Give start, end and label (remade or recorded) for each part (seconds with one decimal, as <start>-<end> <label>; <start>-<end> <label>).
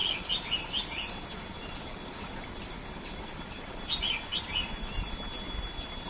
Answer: 0.0-3.7 remade; 3.7-6.1 recorded